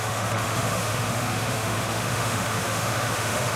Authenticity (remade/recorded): remade